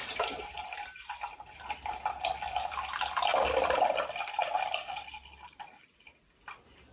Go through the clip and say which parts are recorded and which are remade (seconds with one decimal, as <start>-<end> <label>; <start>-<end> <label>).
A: 0.0-1.7 remade; 1.7-6.9 recorded